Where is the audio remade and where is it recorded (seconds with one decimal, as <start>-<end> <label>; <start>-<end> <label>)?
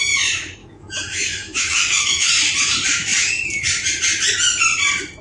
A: 0.0-0.6 recorded; 0.6-2.3 remade; 2.3-5.2 recorded